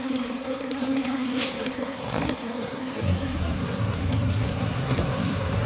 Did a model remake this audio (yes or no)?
yes